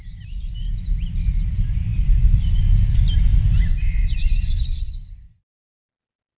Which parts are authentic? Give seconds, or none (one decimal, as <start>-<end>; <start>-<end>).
0.0-4.0; 4.9-6.4